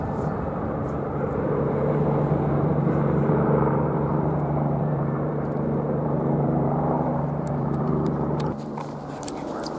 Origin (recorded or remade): remade